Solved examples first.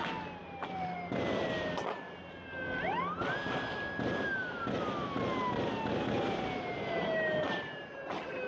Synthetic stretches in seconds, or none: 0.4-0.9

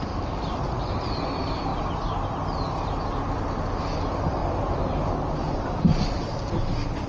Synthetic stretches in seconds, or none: 4.4-6.4

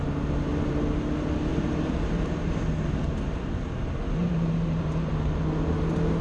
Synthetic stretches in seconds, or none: 1.5-2.5; 4.2-5.1

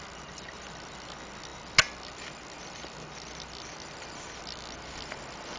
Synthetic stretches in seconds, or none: none